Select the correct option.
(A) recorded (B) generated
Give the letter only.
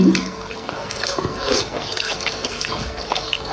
B